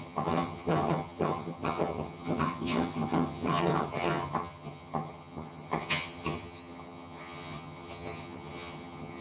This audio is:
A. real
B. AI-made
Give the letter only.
B